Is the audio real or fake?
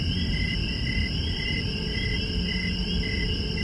real